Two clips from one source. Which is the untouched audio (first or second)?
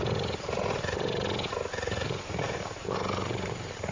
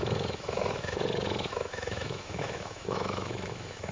first